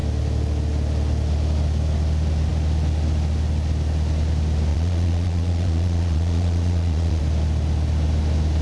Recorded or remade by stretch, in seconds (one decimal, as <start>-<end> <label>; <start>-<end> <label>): 0.0-4.7 recorded; 4.7-7.2 remade; 7.2-8.6 recorded